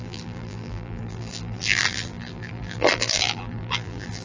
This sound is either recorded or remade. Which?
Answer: remade